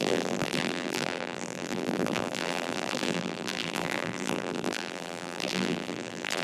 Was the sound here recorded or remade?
remade